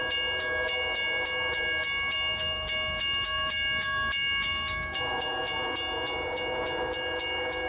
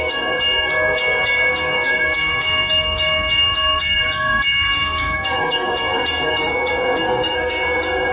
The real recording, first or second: first